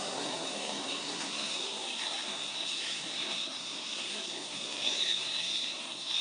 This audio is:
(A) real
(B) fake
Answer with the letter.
B